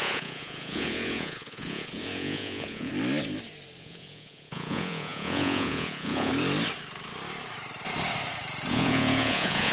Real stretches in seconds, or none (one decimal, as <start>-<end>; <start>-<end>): 2.9-3.8; 6.3-8.7